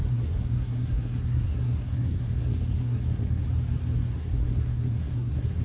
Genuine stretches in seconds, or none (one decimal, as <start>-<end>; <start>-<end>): 3.4-4.2